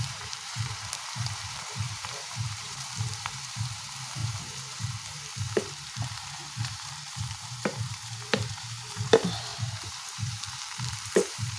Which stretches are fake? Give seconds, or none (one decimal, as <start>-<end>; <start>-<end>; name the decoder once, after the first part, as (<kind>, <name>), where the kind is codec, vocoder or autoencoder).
0.0-11.6 (vocoder, BigVGAN v2)